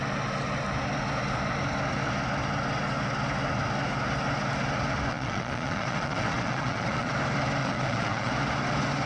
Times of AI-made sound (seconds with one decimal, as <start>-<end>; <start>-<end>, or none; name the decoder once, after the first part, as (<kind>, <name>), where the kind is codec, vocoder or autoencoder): 5.1-7.1 (vocoder, Vocos); 7.6-8.3